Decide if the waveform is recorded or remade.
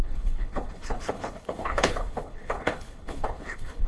remade